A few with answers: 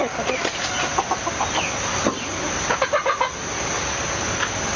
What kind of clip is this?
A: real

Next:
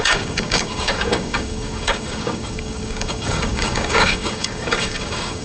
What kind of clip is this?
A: fake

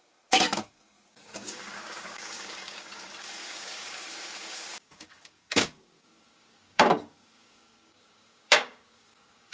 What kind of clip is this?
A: fake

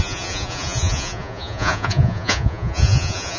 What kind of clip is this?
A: fake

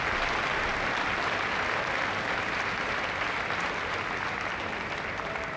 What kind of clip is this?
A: real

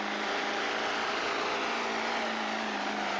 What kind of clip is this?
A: real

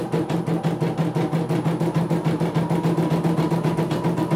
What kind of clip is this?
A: real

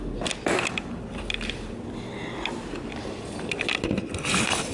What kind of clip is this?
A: real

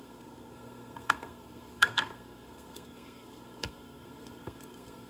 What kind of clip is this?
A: fake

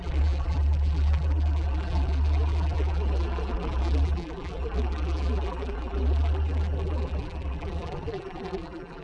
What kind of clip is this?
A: fake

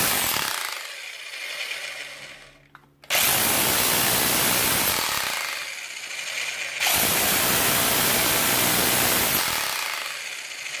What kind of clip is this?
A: real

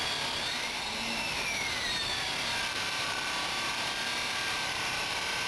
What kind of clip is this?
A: fake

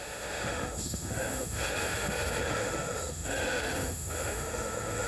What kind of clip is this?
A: fake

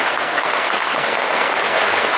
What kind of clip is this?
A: fake